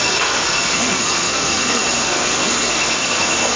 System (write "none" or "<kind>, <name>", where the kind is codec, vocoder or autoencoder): codec, SNAC